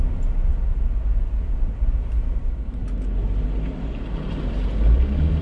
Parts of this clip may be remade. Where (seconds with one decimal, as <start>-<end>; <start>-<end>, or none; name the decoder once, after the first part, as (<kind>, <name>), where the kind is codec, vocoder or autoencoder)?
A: none